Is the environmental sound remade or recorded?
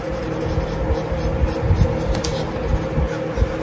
recorded